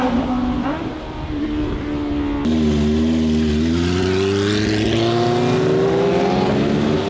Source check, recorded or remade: recorded